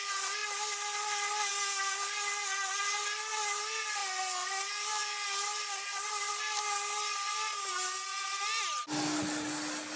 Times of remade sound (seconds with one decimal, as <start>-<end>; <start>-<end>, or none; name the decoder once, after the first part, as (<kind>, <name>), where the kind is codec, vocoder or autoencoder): none